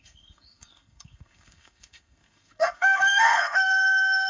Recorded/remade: remade